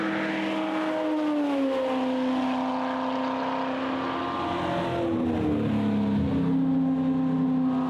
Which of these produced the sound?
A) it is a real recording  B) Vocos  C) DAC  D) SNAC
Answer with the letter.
A